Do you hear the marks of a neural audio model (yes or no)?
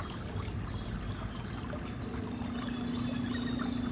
no